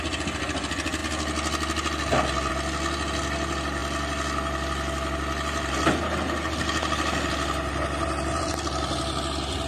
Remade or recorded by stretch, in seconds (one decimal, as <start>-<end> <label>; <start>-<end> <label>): 0.0-9.7 recorded